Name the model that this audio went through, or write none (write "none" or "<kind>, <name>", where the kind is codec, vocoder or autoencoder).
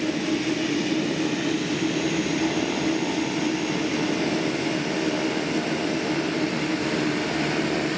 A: none